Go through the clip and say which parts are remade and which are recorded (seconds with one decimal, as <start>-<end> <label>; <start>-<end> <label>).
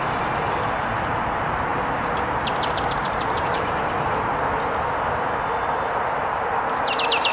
0.0-7.3 recorded